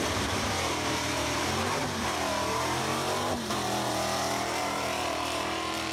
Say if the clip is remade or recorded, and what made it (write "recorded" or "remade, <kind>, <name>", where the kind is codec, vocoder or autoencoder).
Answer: remade, vocoder, BigVGAN v2